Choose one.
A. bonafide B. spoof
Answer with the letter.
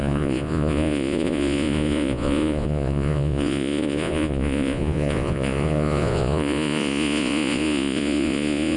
B